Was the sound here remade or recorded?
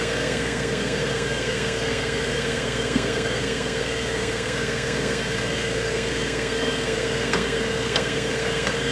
remade